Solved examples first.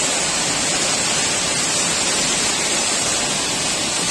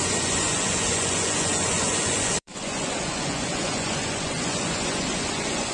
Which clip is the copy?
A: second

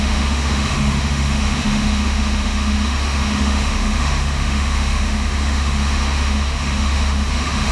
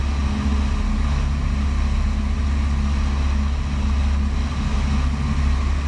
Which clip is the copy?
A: first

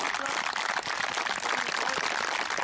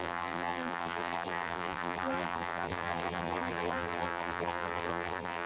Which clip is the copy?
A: second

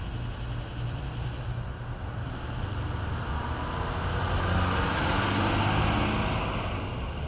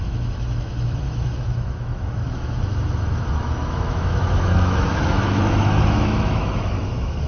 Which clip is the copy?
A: second